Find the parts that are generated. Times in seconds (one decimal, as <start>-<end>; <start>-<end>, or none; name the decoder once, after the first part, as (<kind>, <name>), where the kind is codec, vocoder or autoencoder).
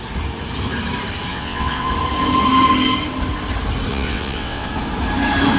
1.3-1.9 (vocoder, WaveNeXt); 3.9-4.7